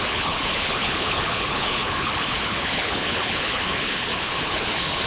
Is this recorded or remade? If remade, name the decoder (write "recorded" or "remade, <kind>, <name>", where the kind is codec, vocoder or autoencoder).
remade, codec, HILCodec